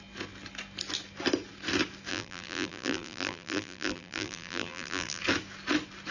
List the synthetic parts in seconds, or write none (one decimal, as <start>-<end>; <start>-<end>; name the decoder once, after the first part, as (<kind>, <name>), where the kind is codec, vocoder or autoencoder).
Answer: 2.1-5.2 (vocoder, BigVGAN v2)